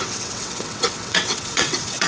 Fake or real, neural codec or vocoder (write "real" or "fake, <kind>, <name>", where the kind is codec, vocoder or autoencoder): fake, vocoder, WaveNeXt